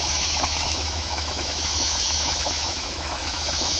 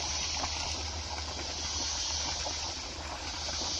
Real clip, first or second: second